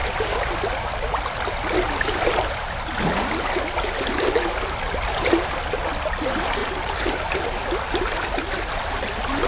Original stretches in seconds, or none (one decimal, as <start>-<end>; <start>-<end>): 0.0-6.6; 7.4-9.5